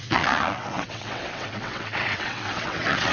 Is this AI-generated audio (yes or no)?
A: yes